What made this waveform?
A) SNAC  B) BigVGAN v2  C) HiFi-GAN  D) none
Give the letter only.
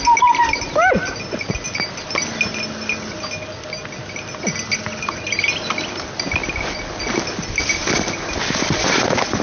D